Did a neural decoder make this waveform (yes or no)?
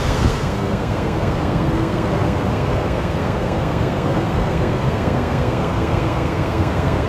yes